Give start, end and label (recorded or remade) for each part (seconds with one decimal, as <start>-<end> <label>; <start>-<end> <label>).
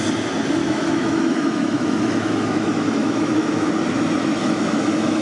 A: 0.0-0.6 recorded; 0.6-3.7 remade; 3.7-4.4 recorded; 4.4-5.2 remade